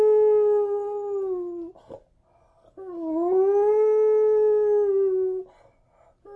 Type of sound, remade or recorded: recorded